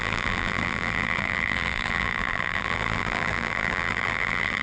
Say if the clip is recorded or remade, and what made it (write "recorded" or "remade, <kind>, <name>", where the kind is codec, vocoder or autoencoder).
remade, vocoder, BigVGAN v2